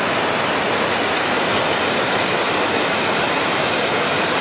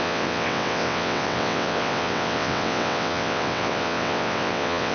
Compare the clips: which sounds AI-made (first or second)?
second